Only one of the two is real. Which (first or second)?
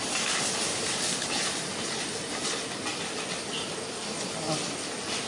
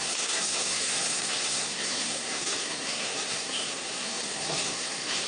first